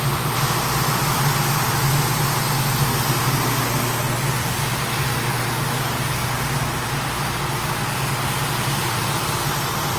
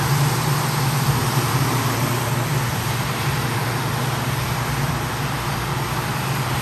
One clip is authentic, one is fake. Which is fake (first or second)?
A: second